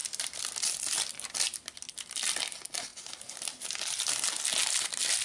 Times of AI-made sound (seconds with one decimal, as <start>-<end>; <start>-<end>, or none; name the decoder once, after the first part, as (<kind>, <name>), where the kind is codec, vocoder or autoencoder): 0.0-0.7 (vocoder, BigVGAN v2)